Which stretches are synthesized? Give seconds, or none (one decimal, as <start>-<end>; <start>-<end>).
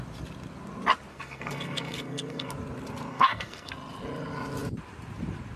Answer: 1.1-2.5; 3.1-3.7